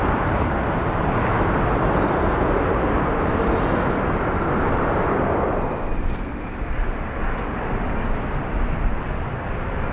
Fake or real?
real